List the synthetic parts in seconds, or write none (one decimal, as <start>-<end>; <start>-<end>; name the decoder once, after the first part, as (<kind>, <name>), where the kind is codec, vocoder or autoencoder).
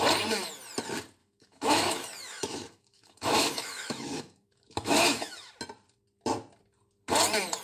1.2-5.5 (autoencoder, DAC-VAE)